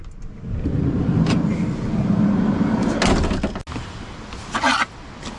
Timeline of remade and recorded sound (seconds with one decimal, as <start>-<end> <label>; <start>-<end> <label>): 0.0-5.4 recorded